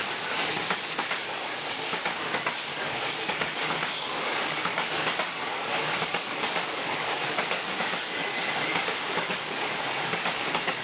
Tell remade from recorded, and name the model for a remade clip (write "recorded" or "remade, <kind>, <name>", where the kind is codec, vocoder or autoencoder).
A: remade, codec, DAC